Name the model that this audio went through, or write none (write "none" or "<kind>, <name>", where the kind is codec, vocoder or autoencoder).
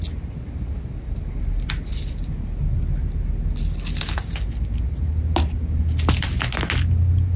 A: none